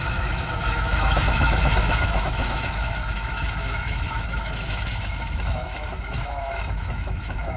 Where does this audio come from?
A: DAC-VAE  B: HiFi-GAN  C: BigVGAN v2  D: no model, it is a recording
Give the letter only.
A